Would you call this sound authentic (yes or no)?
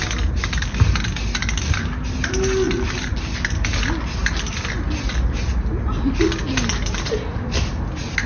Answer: yes